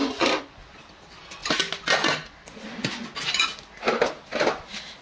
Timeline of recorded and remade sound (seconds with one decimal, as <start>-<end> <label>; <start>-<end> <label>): 0.0-0.6 remade; 0.6-5.0 recorded